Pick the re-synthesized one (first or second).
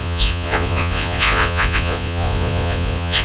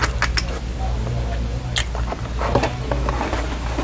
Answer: first